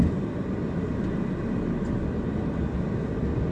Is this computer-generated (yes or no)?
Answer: no